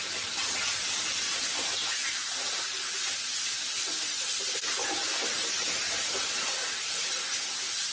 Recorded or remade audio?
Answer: recorded